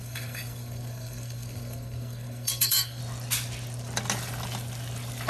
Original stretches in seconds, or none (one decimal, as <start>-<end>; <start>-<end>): 3.0-5.3